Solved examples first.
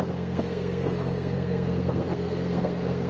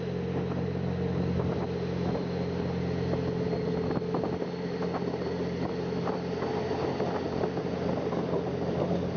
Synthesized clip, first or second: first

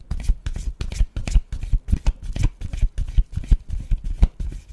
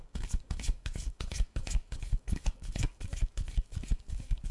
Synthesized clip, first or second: second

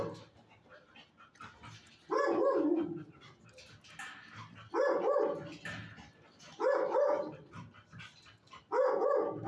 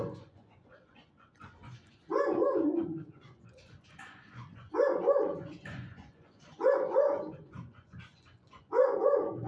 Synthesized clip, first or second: second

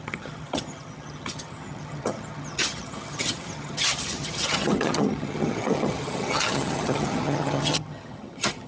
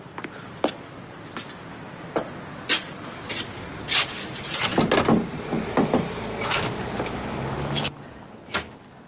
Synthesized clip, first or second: first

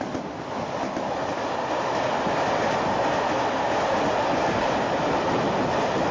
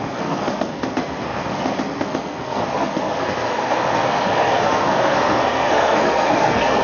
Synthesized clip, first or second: second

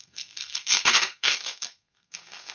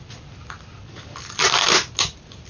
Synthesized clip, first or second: first